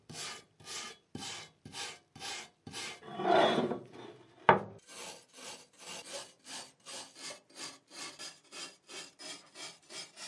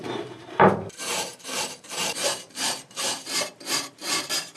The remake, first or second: second